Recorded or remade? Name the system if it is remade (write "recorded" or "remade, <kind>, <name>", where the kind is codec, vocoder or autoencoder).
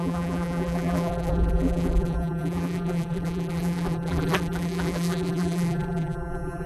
remade, vocoder, BigVGAN v2